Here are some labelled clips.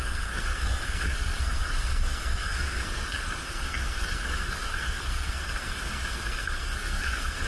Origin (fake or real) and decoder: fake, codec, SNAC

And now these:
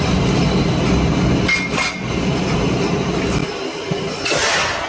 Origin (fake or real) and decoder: real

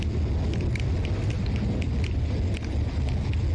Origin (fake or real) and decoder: real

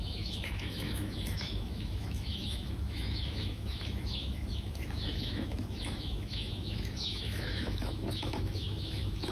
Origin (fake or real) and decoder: fake, autoencoder, DAC-VAE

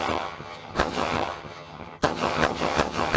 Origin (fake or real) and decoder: fake, vocoder, HiFi-GAN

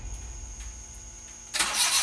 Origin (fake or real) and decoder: real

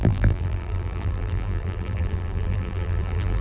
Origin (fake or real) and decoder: fake, vocoder, BigVGAN v2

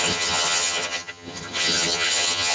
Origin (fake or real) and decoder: fake, vocoder, HiFi-GAN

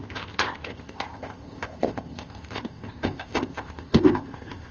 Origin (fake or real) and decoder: fake, codec, ZipCodec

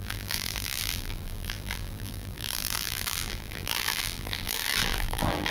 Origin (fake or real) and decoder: fake, vocoder, BigVGAN v2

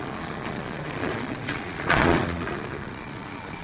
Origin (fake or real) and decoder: fake, vocoder, Vocos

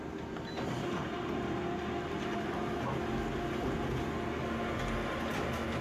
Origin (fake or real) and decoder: real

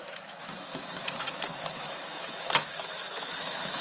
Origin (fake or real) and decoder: fake, autoencoder, DAC-VAE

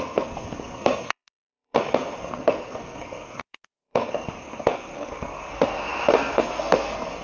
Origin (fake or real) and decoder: fake, codec, SNAC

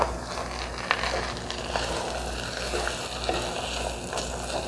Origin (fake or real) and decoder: real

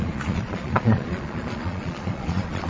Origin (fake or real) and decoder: fake, vocoder, Vocos